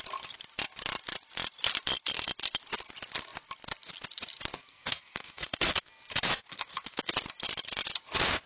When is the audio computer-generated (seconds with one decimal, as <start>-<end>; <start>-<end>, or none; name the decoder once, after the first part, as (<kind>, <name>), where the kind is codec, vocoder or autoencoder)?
4.6-5.9 (codec, SNAC); 6.4-7.1